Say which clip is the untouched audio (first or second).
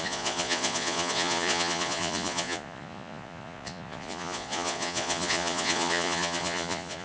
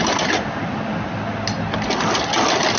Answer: second